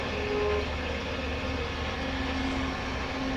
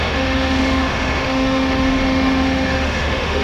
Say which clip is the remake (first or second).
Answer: second